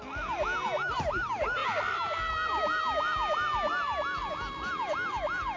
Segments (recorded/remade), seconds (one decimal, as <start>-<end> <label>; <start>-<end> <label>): 0.0-5.6 recorded